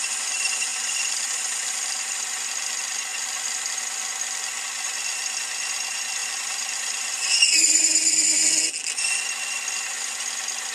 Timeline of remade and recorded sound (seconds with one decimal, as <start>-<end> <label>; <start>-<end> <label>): 0.0-0.7 recorded; 0.7-2.0 remade; 2.0-6.2 recorded; 6.2-7.8 remade; 7.8-10.7 recorded